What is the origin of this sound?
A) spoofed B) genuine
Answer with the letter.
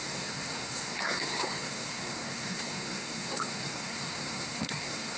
A